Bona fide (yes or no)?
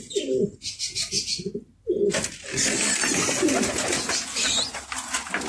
yes